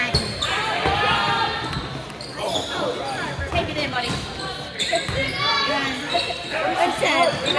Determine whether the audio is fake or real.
real